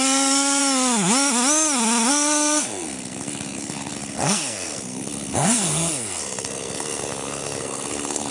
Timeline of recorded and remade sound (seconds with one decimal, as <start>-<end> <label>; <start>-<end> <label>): 0.0-0.6 remade; 0.6-2.1 recorded; 2.1-8.3 remade